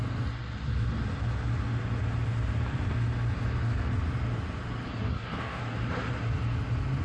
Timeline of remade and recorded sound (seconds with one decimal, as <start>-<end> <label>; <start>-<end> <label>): 0.0-5.0 recorded; 5.0-5.6 remade; 5.6-7.0 recorded